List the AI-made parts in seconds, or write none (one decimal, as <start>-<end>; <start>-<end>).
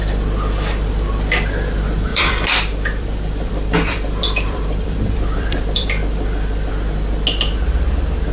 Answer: 2.1-6.7